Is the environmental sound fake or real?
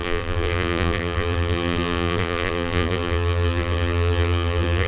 fake